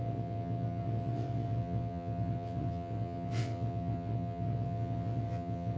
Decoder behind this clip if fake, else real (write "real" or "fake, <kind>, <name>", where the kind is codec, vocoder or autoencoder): fake, vocoder, WaveNeXt